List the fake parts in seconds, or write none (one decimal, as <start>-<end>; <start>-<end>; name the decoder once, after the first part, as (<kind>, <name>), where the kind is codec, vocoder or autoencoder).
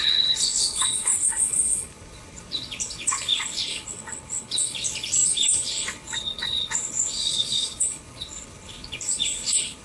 0.0-9.8 (codec, HILCodec)